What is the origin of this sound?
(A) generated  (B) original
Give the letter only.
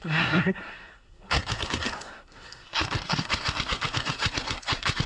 A